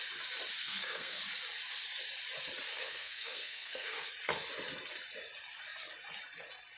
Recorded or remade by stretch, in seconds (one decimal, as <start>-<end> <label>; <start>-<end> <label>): 0.0-0.6 recorded; 0.6-1.2 remade; 1.2-2.7 recorded; 2.7-4.1 remade; 4.1-6.8 recorded